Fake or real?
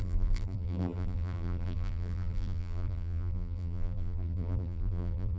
fake